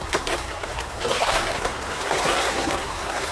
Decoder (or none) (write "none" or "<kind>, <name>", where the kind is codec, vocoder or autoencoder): codec, SNAC